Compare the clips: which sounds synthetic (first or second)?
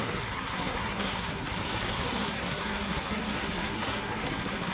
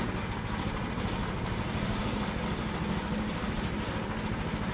first